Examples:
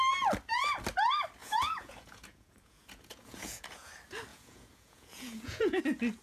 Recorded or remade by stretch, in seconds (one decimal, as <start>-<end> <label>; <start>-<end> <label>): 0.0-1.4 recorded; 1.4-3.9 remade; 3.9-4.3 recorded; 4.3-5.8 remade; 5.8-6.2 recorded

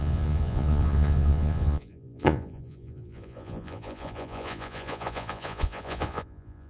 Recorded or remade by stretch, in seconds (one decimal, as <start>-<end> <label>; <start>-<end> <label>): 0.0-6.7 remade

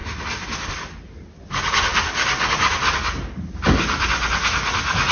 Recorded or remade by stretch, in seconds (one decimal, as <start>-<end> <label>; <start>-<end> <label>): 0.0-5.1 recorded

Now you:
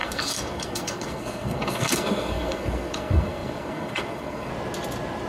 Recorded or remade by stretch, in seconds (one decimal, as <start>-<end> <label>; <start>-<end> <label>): 0.0-4.5 remade; 4.5-5.3 recorded

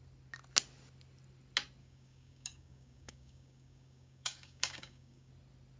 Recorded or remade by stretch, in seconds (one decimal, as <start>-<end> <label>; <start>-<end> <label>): 0.0-1.8 recorded; 1.8-5.3 remade; 5.3-5.8 recorded

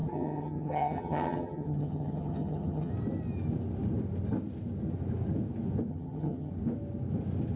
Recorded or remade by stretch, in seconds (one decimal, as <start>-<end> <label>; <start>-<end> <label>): 0.0-2.9 remade; 2.9-5.9 recorded; 5.9-6.5 remade; 6.5-7.6 recorded

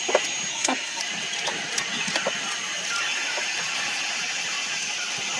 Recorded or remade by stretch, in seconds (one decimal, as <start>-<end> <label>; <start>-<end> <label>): 0.0-0.5 recorded; 0.5-1.0 remade; 1.0-5.4 recorded